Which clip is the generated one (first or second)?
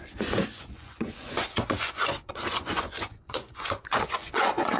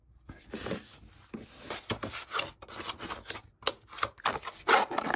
first